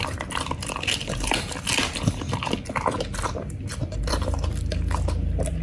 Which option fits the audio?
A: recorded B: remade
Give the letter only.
B